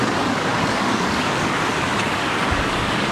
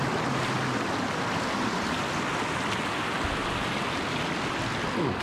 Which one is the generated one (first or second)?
first